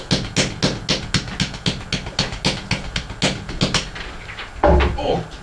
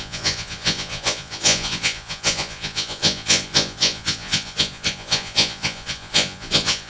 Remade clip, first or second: second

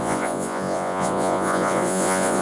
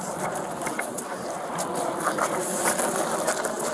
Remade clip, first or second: first